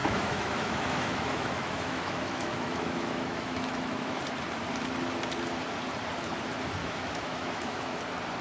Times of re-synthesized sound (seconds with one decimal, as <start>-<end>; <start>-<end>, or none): 0.0-4.2; 6.8-8.0